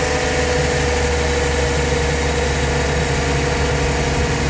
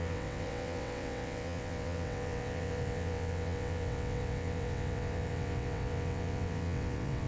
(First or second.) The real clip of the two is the first